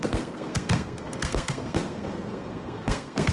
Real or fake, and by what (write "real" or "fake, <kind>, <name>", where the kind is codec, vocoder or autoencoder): fake, codec, SNAC